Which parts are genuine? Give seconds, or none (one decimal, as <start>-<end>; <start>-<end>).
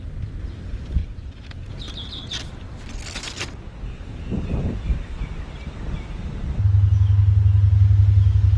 0.0-1.0; 1.7-8.6